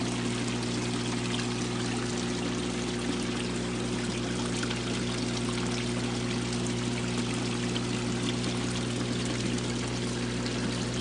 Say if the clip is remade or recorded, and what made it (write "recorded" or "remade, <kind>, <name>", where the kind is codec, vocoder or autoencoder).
recorded